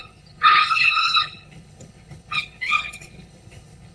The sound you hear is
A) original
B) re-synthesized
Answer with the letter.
B